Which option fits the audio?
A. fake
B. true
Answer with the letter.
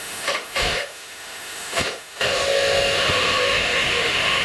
A